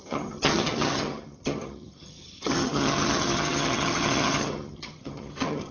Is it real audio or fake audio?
fake